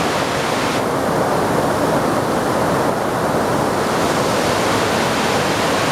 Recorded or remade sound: recorded